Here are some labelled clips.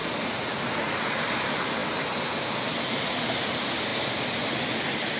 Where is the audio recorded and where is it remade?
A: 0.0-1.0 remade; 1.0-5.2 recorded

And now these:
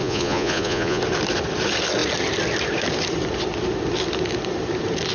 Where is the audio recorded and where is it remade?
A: 0.0-1.0 remade; 1.0-5.1 recorded

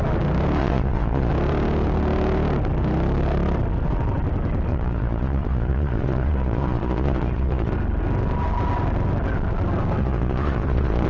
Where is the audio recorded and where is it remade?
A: 0.0-0.6 recorded; 0.6-1.3 remade; 1.3-4.7 recorded; 4.7-7.7 remade; 7.7-10.0 recorded; 10.0-11.1 remade

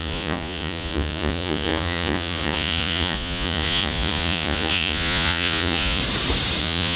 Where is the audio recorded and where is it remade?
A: 0.0-6.0 remade; 6.0-6.6 recorded; 6.6-7.0 remade